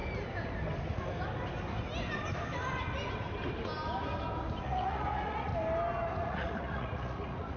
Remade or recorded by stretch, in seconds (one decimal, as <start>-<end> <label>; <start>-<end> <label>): 0.0-4.6 recorded; 4.6-5.5 remade; 5.5-6.1 recorded; 6.1-7.6 remade